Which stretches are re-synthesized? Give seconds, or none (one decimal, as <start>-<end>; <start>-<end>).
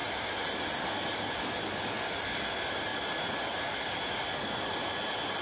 none